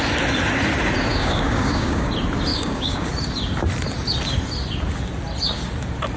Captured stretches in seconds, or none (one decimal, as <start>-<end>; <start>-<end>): 0.0-1.1; 2.1-2.5; 3.1-6.2